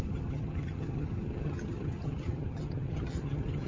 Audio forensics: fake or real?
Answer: fake